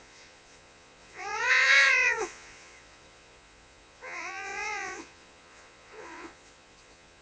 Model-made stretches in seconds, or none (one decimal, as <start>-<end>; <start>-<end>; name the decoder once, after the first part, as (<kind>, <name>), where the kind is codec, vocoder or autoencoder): 0.0-7.2 (vocoder, Vocos)